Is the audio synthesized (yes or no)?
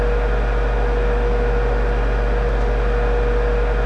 no